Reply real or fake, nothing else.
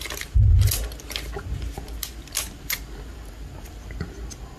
real